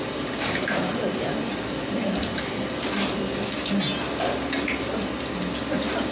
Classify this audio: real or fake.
real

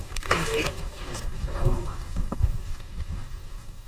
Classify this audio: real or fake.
fake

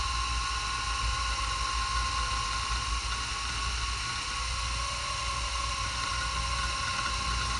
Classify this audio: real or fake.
real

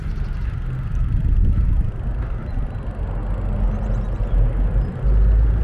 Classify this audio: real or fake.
real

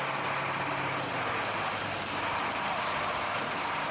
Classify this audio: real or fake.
real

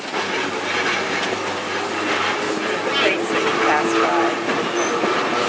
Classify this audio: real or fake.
real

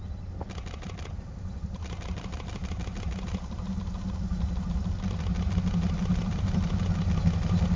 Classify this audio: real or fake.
real